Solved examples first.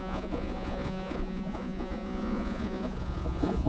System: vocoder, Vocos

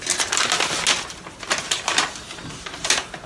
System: none